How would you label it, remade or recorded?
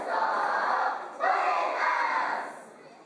recorded